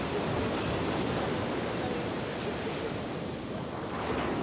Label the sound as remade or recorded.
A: recorded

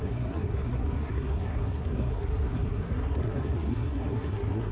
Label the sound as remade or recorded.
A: remade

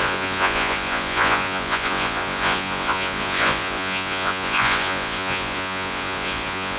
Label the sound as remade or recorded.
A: remade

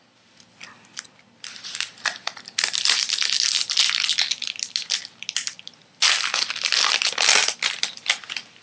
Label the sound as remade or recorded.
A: recorded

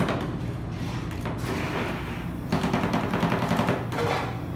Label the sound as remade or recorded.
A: recorded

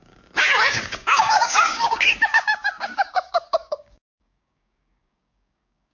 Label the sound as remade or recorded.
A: remade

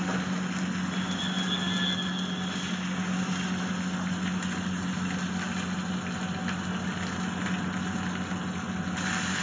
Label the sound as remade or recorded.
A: recorded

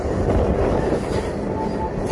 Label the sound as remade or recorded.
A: recorded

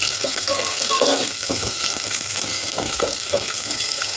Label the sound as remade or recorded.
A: remade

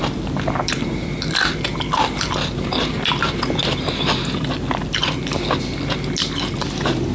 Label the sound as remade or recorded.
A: recorded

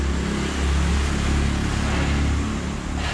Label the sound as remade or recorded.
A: recorded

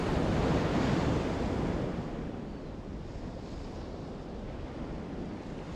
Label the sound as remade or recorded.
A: recorded